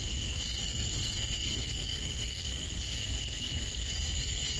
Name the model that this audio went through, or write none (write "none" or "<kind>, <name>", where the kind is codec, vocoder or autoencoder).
codec, SNAC